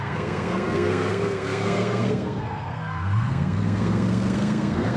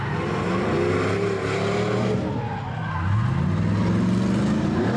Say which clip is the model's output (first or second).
first